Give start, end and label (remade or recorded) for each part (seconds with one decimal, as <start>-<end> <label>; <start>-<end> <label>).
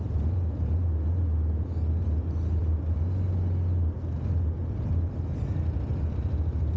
0.0-6.8 recorded